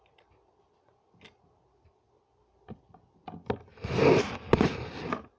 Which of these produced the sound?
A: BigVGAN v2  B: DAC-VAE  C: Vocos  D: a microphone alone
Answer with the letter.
D